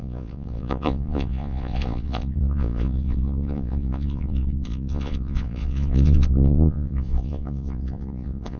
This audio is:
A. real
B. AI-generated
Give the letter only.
B